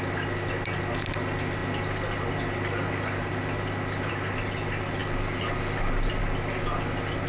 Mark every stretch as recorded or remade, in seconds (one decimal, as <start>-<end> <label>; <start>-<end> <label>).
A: 0.0-7.3 recorded

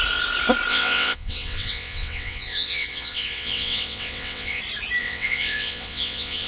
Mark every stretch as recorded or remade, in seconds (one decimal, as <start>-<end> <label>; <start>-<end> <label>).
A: 0.0-0.7 recorded; 0.7-4.6 remade; 4.6-5.0 recorded; 5.0-6.5 remade

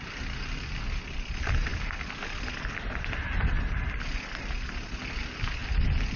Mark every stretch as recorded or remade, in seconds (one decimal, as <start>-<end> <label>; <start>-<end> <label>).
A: 0.0-6.2 recorded

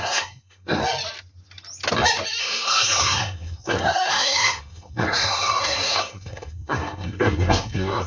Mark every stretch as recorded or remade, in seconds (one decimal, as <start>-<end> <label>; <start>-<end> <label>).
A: 0.0-0.8 remade; 0.8-2.4 recorded; 2.4-8.1 remade